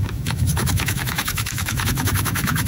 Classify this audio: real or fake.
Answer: fake